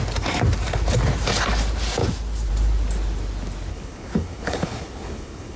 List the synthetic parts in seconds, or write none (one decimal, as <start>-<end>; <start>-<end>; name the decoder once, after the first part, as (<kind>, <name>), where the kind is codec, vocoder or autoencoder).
3.7-5.6 (codec, HILCodec)